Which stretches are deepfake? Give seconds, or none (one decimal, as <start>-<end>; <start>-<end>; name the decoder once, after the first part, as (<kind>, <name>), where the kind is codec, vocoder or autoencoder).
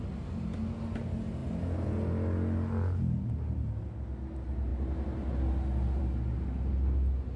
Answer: none